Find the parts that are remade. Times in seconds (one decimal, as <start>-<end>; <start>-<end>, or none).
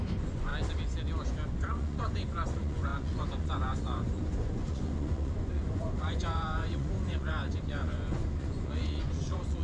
0.0-0.5; 1.5-9.6